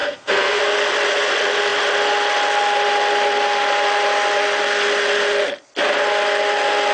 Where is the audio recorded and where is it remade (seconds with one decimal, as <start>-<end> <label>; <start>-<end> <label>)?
0.0-0.6 remade; 0.6-6.9 recorded